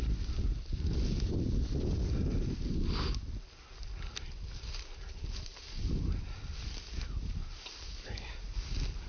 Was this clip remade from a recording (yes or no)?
no